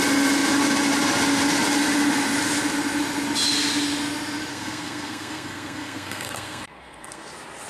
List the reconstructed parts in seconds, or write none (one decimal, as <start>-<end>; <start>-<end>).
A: 4.5-7.3